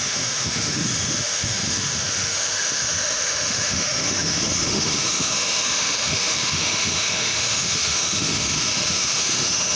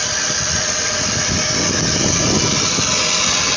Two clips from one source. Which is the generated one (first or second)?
first